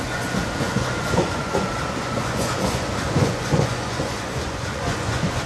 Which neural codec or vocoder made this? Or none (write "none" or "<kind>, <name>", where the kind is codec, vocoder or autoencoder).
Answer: vocoder, Vocos